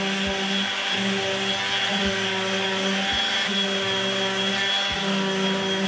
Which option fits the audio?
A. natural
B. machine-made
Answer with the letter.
A